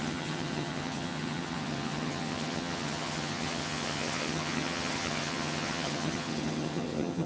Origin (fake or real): fake